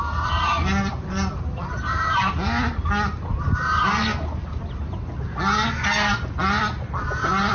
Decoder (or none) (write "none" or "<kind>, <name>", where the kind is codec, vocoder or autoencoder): none